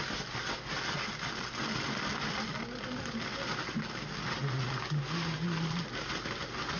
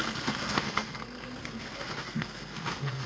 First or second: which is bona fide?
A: first